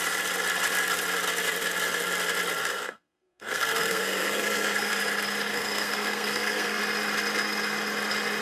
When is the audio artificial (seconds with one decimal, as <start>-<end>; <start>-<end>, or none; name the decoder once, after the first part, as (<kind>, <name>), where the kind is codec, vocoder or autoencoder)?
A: 2.7-4.9 (codec, SNAC); 5.5-6.8